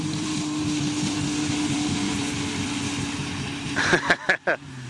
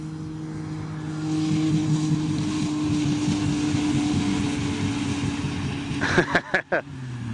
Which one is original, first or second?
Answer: second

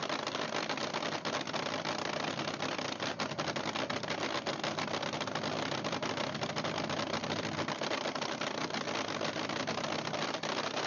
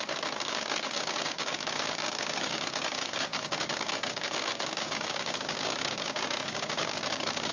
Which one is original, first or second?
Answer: first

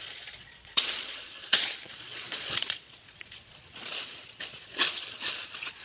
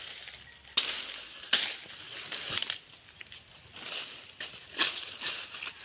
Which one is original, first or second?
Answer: second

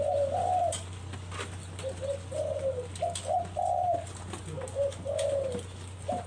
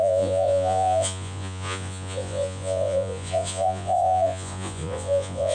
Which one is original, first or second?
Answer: first